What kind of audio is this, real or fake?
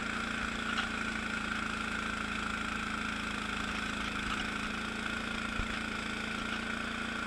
real